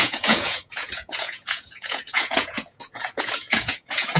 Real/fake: fake